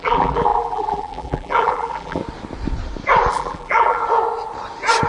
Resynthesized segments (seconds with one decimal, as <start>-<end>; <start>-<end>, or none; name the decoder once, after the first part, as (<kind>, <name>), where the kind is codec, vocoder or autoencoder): 0.0-2.2 (vocoder, BigVGAN v2); 3.3-4.0